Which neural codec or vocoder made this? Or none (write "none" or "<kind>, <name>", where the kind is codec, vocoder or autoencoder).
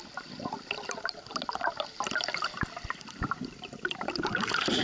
none